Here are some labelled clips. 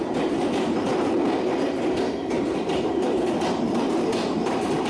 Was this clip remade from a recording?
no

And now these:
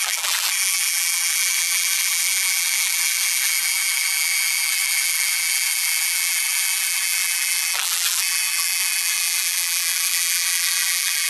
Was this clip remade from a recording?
yes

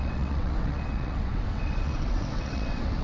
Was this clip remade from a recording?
yes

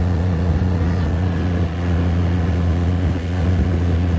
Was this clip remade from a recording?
yes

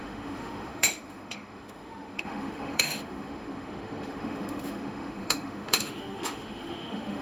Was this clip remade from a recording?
yes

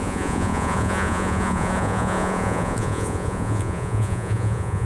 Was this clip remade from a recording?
yes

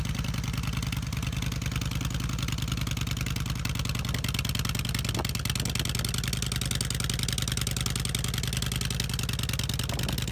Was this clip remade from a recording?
no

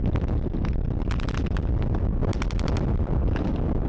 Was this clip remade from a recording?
no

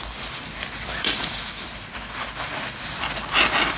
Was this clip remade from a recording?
no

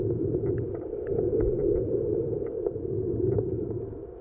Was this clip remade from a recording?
yes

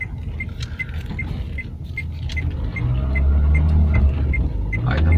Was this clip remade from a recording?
no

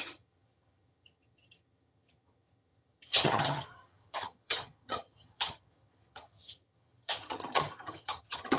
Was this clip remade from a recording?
yes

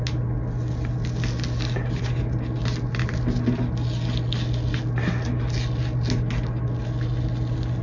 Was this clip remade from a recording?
no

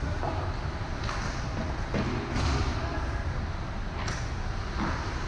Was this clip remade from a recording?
no